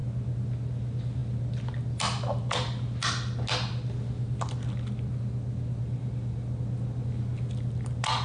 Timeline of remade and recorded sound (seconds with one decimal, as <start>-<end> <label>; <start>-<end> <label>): 0.0-8.2 recorded